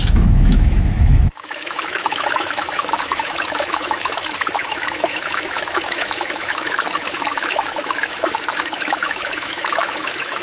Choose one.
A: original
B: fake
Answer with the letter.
B